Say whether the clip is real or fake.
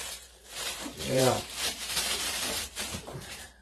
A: fake